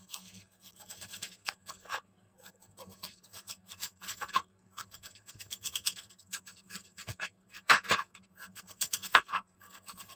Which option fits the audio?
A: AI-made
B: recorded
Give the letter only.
A